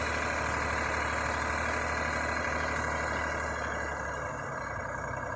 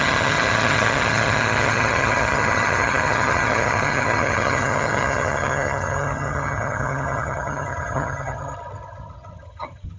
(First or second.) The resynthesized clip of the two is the second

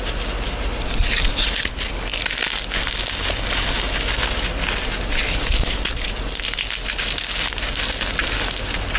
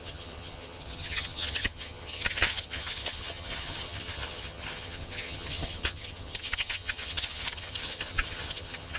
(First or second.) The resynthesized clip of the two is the second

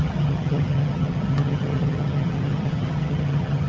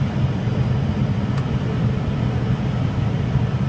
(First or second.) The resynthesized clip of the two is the first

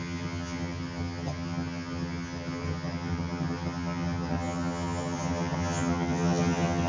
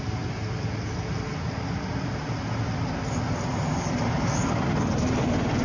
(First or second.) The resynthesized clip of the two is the first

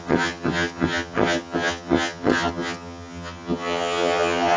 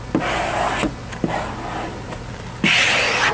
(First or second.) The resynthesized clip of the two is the first